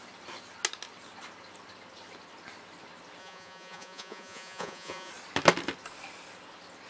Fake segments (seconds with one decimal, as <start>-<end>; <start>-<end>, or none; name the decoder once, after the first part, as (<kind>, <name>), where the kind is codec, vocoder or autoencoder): 3.2-5.1 (vocoder, Vocos)